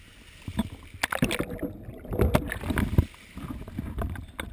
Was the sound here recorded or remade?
recorded